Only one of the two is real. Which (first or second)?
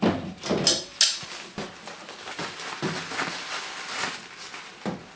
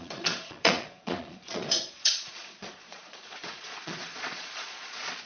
first